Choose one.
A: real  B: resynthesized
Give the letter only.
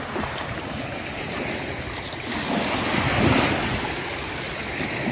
A